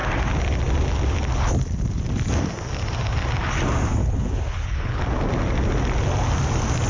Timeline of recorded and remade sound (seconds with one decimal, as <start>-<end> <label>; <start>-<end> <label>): 0.0-4.0 recorded; 4.0-5.0 remade; 5.0-6.9 recorded